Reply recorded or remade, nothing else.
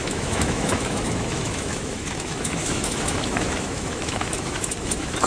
remade